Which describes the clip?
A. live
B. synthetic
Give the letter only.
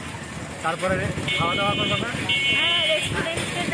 A